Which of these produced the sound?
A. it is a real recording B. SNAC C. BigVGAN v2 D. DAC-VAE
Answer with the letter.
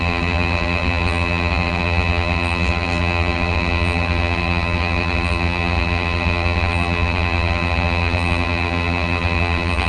C